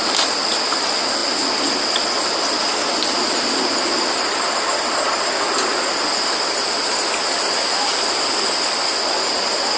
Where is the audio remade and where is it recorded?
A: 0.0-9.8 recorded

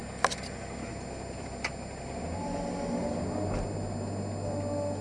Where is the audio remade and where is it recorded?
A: 0.0-5.0 recorded

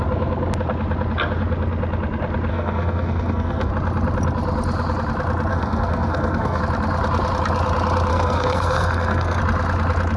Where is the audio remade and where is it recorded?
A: 0.0-2.5 recorded; 2.5-3.7 remade; 3.7-5.5 recorded; 5.5-6.6 remade; 6.6-8.1 recorded; 8.1-9.4 remade; 9.4-10.2 recorded

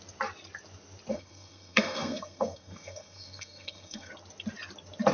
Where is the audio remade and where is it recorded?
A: 0.0-1.1 recorded; 1.1-4.1 remade; 4.1-5.1 recorded

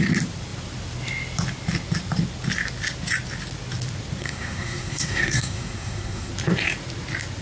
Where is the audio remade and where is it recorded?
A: 0.0-4.2 recorded; 4.2-6.3 remade; 6.3-7.4 recorded

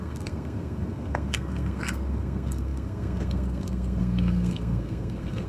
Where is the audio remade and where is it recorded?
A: 0.0-5.5 remade

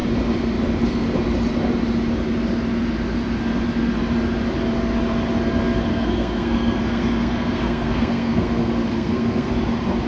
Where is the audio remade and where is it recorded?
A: 0.0-5.9 recorded; 5.9-9.5 remade; 9.5-10.1 recorded